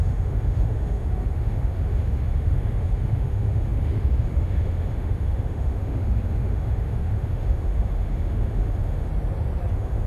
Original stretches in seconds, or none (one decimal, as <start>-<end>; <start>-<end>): 9.1-9.7